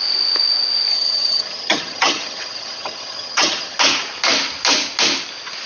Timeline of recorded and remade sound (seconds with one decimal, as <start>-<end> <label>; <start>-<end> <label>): 0.0-0.9 recorded; 0.9-3.8 remade; 3.8-5.7 recorded